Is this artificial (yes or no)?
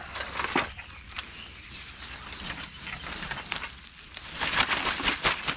no